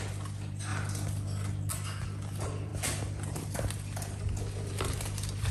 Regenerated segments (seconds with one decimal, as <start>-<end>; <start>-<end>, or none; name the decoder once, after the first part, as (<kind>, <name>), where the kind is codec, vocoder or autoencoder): none